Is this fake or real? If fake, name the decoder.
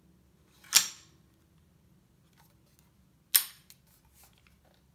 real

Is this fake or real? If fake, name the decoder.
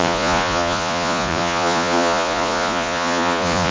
fake, vocoder, Vocos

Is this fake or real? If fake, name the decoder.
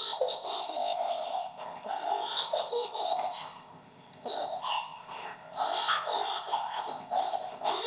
fake, codec, ZipCodec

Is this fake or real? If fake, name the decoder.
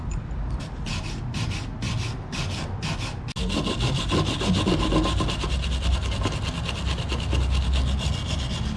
real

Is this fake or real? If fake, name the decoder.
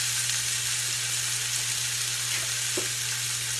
real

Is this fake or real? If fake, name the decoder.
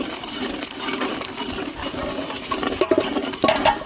fake, vocoder, BigVGAN v2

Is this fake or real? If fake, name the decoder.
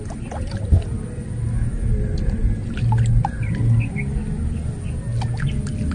real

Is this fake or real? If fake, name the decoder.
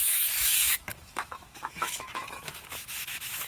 fake, autoencoder, DAC-VAE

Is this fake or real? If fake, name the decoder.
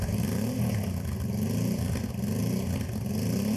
real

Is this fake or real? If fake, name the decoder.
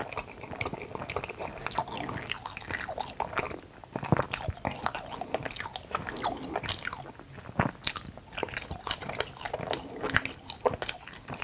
real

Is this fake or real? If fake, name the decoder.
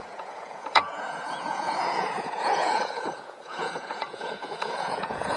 fake, vocoder, Vocos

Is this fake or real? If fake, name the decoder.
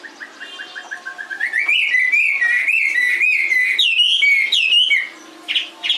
real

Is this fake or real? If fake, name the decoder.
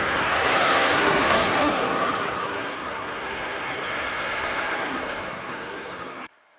fake, codec, SNAC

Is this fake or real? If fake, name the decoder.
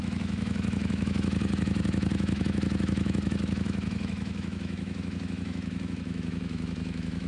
fake, autoencoder, DAC-VAE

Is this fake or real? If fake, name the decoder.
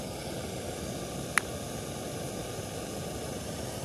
real